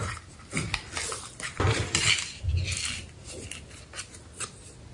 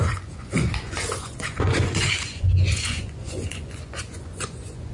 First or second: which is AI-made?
second